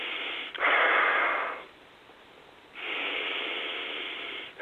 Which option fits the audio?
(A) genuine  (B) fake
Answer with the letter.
A